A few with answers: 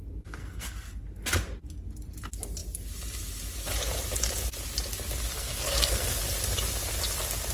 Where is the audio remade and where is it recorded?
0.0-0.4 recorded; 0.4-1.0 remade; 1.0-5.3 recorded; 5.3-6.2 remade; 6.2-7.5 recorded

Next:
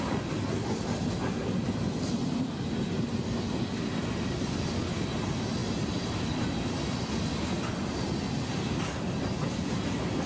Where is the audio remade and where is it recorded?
0.0-10.3 recorded

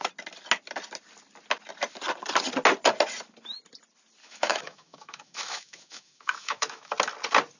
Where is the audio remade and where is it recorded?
0.0-4.2 recorded; 4.2-6.9 remade; 6.9-7.6 recorded

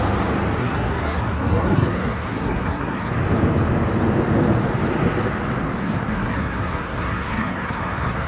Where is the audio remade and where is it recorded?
0.0-0.6 recorded; 0.6-3.1 remade; 3.1-5.8 recorded; 5.8-8.3 remade

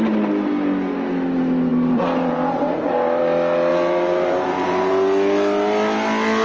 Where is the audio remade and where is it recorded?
0.0-1.7 recorded; 1.7-3.2 remade; 3.2-3.7 recorded; 3.7-4.9 remade; 4.9-6.4 recorded

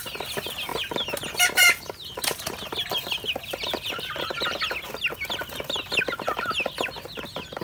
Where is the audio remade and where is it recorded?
0.0-7.6 recorded

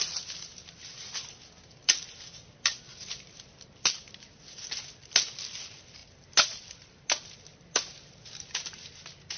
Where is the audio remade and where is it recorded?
0.0-9.4 recorded